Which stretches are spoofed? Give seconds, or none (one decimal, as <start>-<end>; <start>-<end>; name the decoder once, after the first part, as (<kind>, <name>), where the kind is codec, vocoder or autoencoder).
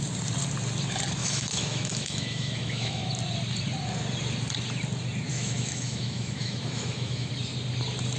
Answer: 1.2-3.1 (autoencoder, DAC-VAE); 5.3-7.3